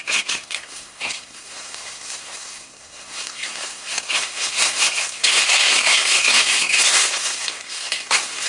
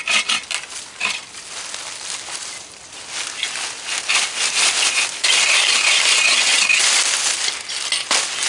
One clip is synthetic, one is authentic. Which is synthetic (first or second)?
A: first